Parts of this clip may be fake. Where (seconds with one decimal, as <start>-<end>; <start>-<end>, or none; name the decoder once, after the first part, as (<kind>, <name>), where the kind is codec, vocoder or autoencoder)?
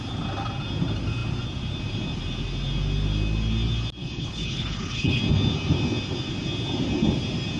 4.0-5.2 (codec, HILCodec)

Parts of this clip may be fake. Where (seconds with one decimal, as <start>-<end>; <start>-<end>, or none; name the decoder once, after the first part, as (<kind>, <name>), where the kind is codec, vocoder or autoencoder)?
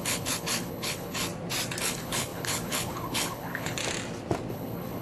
0.0-1.3 (codec, HILCodec); 1.8-3.8; 4.5-5.0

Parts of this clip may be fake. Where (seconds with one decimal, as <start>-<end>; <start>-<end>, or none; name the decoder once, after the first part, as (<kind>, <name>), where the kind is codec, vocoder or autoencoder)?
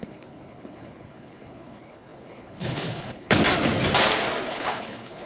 0.0-3.4 (codec, HILCodec); 4.5-5.3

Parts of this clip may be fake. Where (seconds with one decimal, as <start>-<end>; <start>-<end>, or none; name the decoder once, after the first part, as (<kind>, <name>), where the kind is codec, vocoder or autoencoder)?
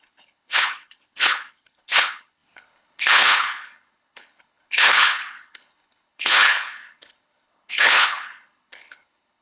0.0-9.4 (codec, HILCodec)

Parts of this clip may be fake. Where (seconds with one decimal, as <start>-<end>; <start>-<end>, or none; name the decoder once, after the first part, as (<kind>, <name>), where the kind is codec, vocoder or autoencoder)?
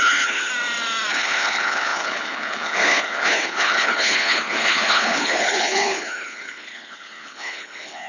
0.0-0.5 (codec, HILCodec); 1.1-8.1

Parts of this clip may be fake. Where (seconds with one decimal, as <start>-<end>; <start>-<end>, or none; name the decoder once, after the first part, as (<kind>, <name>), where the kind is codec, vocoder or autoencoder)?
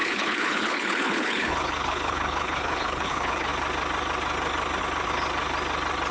0.0-3.5 (codec, HILCodec)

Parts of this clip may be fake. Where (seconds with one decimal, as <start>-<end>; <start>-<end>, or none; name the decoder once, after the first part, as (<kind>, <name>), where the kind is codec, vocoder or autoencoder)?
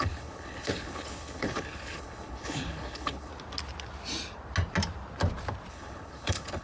0.0-3.3 (codec, HILCodec); 5.7-6.6